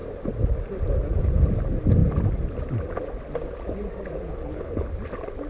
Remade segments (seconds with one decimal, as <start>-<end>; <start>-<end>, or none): 4.3-5.0